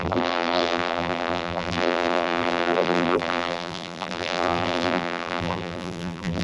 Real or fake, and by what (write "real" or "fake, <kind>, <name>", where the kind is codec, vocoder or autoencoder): fake, vocoder, BigVGAN v2